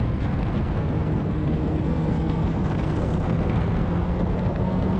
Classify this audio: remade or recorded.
remade